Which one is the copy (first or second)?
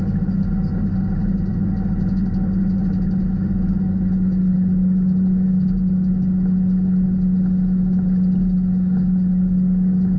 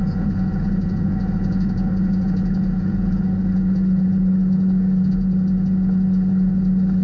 second